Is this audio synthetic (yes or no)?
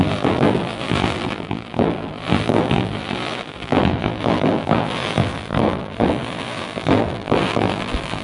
yes